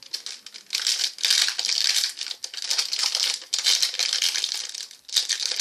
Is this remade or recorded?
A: recorded